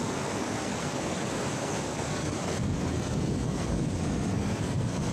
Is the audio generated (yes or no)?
yes